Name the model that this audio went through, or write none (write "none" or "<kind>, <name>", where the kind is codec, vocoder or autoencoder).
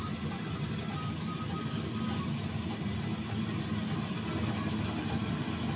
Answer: none